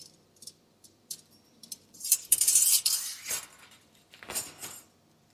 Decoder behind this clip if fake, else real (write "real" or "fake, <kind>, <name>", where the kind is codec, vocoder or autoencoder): fake, vocoder, BigVGAN v2